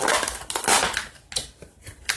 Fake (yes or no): no